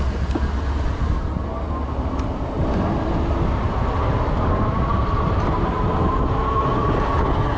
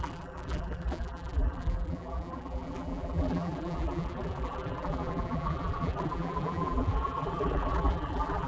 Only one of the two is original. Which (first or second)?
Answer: first